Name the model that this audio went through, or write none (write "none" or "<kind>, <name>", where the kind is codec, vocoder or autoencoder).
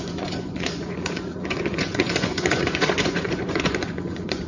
vocoder, Vocos